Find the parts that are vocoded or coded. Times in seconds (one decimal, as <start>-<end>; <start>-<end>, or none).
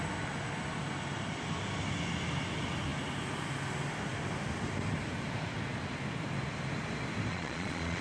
7.3-8.0